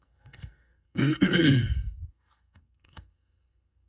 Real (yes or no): no